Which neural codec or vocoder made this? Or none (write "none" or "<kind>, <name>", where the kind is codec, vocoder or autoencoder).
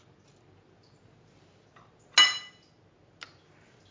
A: none